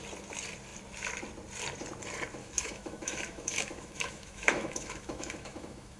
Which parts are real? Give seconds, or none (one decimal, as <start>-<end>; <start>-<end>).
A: 0.0-2.4